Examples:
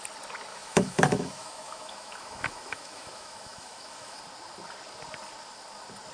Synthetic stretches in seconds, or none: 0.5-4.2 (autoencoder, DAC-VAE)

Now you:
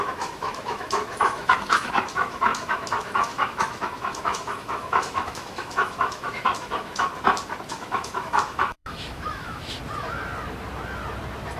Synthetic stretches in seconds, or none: 0.0-7.1 (autoencoder, DAC-VAE); 7.7-9.8

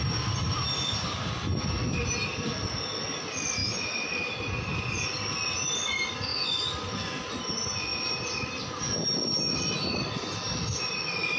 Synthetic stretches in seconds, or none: none

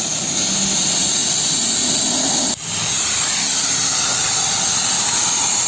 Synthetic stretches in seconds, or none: none

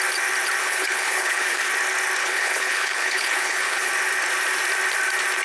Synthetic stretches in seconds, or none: 0.6-1.7 (codec, HILCodec); 2.2-3.9

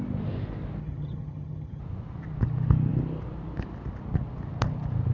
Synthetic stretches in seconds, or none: 0.8-1.8 (vocoder, HiFi-GAN)

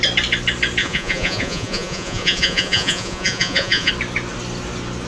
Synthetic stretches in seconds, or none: 0.8-3.9 (vocoder, Vocos)

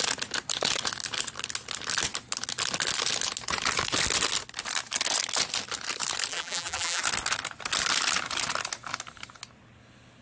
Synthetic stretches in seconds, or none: 6.3-7.0 (vocoder, BigVGAN v2)